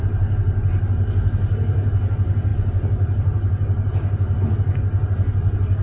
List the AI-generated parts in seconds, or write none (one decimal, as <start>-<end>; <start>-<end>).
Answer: none